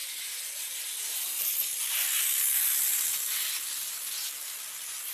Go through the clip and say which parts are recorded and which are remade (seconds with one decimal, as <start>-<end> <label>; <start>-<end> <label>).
0.0-5.1 recorded